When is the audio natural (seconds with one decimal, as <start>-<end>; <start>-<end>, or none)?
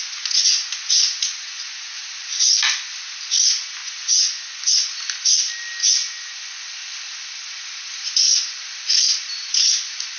2.0-3.8; 4.6-6.0; 6.6-10.2